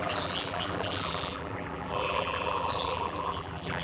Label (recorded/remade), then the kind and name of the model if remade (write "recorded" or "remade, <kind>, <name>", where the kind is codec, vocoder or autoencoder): remade, vocoder, BigVGAN v2